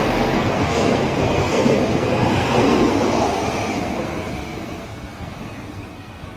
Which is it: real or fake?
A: fake